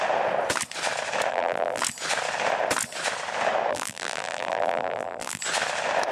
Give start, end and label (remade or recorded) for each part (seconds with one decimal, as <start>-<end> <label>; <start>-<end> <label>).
0.0-1.3 recorded; 1.3-1.8 remade; 1.8-3.7 recorded; 3.7-5.4 remade; 5.4-6.1 recorded